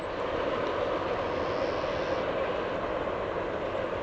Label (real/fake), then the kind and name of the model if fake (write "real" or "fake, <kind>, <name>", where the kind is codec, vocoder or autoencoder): real